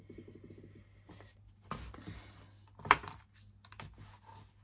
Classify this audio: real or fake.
real